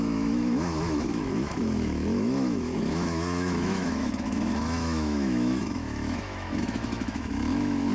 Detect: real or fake fake